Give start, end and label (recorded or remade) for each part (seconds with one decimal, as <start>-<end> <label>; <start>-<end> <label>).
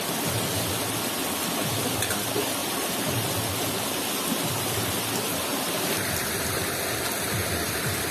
0.0-2.6 recorded; 2.6-3.8 remade; 3.8-5.5 recorded; 5.5-6.4 remade; 6.4-8.1 recorded